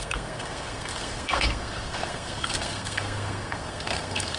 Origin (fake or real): fake